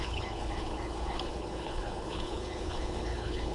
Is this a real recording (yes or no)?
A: no